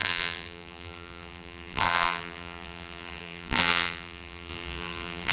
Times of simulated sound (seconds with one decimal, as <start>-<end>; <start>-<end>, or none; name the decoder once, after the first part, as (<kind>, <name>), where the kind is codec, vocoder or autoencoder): 0.0-5.3 (vocoder, BigVGAN v2)